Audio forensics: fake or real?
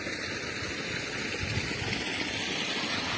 real